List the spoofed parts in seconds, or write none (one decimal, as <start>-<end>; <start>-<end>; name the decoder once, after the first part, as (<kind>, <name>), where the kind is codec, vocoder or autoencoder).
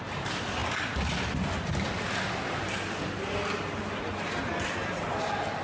none